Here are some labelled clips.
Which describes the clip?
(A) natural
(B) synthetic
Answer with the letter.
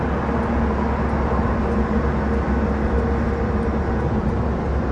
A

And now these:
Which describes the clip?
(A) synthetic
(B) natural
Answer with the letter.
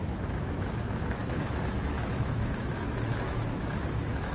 A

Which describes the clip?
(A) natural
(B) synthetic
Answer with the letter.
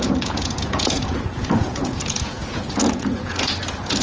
B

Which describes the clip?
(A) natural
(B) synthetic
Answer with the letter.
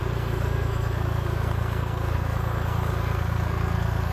B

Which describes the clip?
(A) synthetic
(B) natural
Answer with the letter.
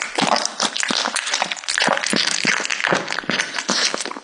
B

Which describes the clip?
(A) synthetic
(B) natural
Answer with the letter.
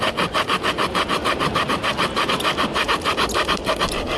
B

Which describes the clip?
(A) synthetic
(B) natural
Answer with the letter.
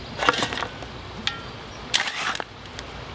B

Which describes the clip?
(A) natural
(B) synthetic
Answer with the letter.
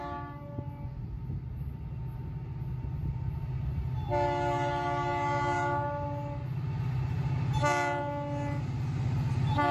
A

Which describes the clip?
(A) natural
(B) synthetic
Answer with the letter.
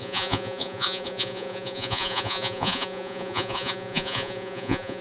B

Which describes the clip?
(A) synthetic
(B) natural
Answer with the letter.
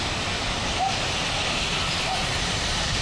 B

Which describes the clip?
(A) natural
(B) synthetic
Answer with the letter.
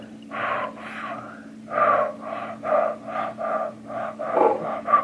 A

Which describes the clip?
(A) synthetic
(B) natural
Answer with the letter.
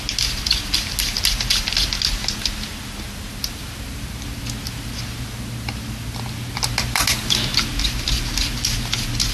B